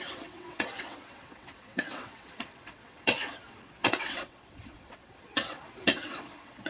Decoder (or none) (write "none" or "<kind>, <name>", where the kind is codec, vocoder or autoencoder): vocoder, WaveNeXt